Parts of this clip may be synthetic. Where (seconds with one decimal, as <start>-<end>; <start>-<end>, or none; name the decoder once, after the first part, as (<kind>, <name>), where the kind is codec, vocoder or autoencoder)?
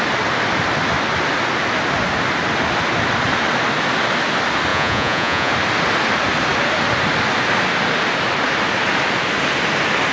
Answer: 4.7-5.5 (vocoder, Vocos)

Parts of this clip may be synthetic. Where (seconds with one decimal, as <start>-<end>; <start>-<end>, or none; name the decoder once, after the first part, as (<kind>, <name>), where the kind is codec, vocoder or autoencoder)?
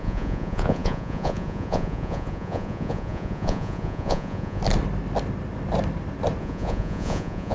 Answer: 0.0-4.6 (vocoder, Vocos); 6.4-7.5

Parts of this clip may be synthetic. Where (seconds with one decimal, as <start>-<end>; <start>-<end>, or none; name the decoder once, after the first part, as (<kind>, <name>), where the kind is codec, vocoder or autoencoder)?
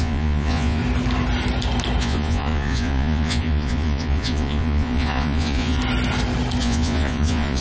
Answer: 0.0-0.8 (vocoder, Vocos); 2.0-5.8; 6.6-7.6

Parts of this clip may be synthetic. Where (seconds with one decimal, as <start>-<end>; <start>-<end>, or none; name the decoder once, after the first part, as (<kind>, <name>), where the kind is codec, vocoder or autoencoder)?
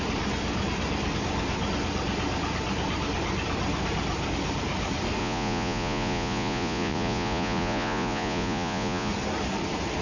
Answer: 5.2-9.1 (vocoder, Vocos)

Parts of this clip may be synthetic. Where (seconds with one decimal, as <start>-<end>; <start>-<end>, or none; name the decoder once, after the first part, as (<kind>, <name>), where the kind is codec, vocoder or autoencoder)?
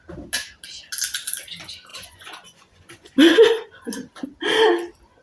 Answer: 1.9-3.9 (vocoder, Vocos)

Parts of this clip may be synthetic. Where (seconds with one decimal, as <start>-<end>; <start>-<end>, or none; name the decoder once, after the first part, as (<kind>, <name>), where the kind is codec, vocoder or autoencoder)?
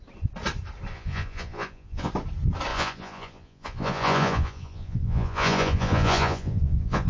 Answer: 0.9-2.1 (vocoder, Vocos); 2.7-7.1